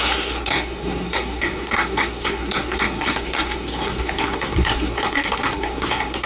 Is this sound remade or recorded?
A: remade